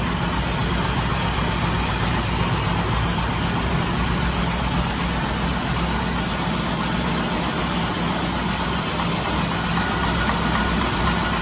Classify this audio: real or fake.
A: real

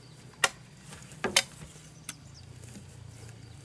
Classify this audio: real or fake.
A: real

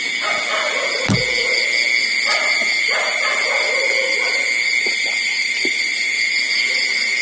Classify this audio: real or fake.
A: real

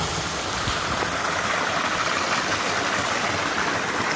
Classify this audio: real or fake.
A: real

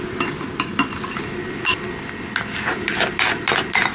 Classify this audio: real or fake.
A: real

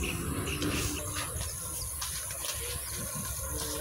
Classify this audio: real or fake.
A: real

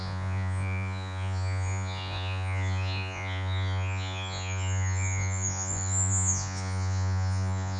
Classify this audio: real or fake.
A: fake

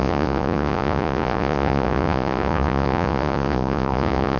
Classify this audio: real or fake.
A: fake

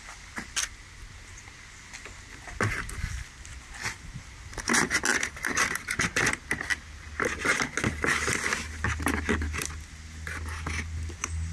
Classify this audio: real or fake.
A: real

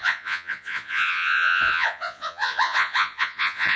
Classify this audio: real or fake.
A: fake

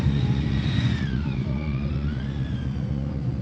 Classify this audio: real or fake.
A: fake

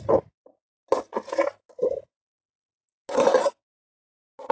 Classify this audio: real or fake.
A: real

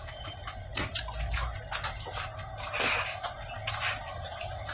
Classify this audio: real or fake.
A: real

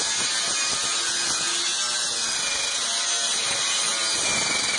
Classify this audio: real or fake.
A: real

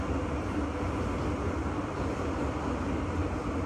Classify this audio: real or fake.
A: real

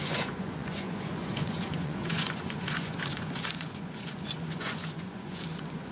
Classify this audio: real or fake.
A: fake